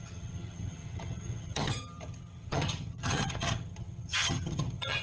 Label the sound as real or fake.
fake